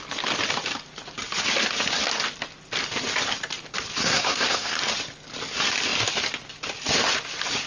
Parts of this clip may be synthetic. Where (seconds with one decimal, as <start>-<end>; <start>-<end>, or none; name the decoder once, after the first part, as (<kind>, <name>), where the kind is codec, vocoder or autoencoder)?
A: 4.0-4.8 (codec, SNAC)